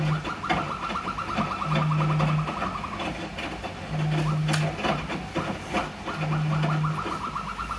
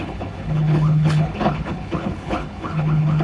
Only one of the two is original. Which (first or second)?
first